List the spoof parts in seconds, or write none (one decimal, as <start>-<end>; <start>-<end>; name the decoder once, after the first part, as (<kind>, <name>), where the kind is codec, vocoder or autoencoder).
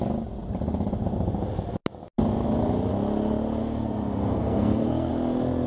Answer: 3.6-5.1 (codec, SNAC)